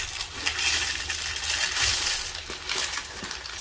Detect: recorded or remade recorded